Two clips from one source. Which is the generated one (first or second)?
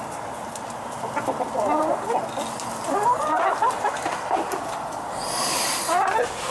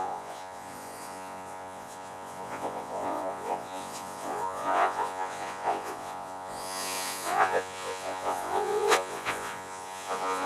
second